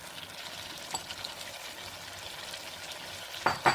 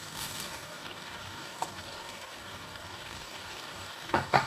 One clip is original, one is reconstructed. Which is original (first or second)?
first